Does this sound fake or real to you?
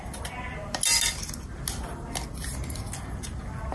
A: real